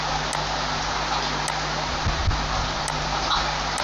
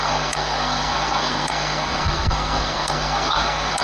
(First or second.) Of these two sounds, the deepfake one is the second